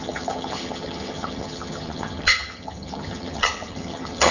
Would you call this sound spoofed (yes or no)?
yes